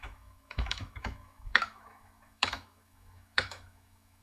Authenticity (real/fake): fake